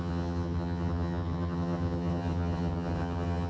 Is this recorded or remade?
remade